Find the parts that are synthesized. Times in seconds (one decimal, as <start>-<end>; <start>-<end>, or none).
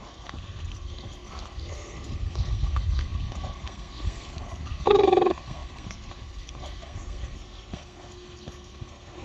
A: 0.0-9.2